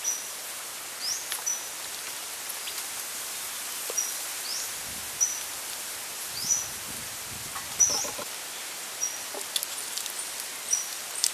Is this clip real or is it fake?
real